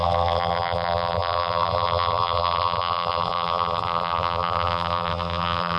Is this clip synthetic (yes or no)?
yes